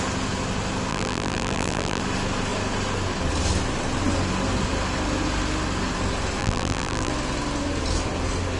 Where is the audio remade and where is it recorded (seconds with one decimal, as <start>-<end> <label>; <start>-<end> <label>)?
0.0-0.9 recorded; 0.9-2.0 remade; 2.0-6.4 recorded; 6.4-7.1 remade; 7.1-8.6 recorded